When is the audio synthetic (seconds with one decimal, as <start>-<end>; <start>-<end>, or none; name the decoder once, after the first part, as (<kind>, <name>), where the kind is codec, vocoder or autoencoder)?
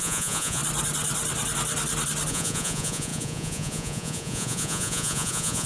0.0-0.6 (vocoder, Vocos); 2.3-5.7